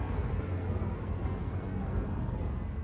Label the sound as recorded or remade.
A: remade